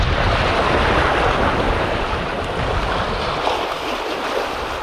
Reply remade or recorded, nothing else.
recorded